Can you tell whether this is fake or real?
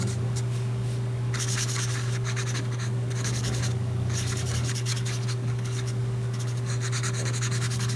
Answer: fake